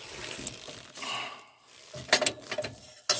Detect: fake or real real